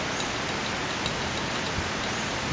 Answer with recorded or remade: recorded